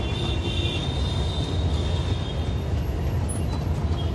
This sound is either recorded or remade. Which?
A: recorded